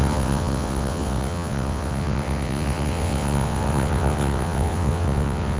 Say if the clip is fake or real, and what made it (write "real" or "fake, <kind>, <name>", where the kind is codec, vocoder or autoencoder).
fake, vocoder, WaveNeXt